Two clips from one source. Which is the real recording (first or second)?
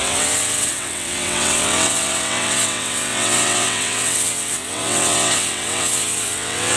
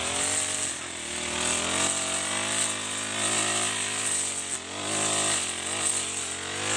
second